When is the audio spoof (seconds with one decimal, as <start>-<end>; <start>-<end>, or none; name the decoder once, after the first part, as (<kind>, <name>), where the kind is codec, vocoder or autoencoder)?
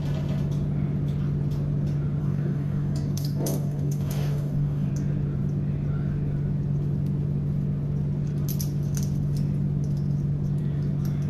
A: 2.2-4.9 (codec, DAC)